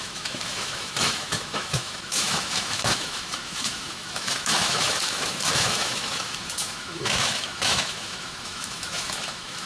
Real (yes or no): no